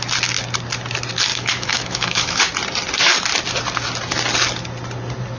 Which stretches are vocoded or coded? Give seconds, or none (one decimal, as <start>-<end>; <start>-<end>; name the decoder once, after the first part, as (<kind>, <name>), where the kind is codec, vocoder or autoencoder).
1.3-2.4 (autoencoder, DAC-VAE)